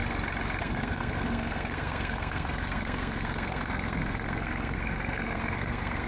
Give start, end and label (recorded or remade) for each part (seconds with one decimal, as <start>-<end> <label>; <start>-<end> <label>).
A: 0.0-0.6 recorded; 0.6-6.1 remade